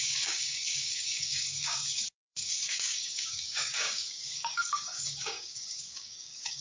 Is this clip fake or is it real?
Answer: fake